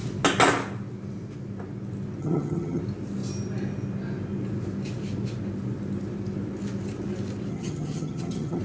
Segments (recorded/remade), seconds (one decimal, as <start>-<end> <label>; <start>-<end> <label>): 0.0-2.2 recorded; 2.2-2.8 remade; 2.8-7.5 recorded; 7.5-8.6 remade

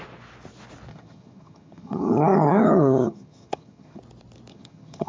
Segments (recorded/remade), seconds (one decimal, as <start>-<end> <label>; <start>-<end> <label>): 0.0-0.9 recorded; 0.9-4.0 remade; 4.0-4.5 recorded; 4.5-5.1 remade

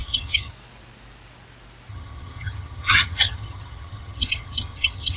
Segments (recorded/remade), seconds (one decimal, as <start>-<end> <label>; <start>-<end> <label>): 0.0-0.5 remade; 0.5-1.9 recorded; 1.9-5.2 remade

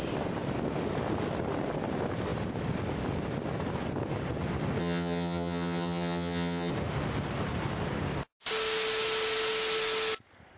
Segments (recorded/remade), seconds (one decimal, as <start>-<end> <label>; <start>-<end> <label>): 0.0-4.8 recorded; 4.8-6.7 remade; 6.7-10.6 recorded

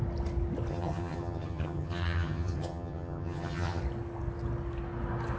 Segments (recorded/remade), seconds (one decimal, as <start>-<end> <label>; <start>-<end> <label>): 0.0-0.7 recorded; 0.7-3.8 remade; 3.8-5.4 recorded

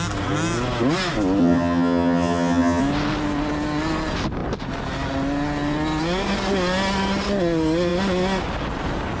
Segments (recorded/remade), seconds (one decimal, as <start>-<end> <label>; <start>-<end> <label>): 0.0-1.4 recorded; 1.4-2.8 remade; 2.8-9.2 recorded

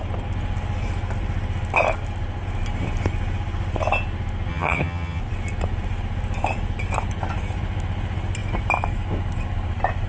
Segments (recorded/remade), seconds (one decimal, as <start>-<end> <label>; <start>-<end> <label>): 0.0-4.5 recorded; 4.5-5.2 remade; 5.2-10.1 recorded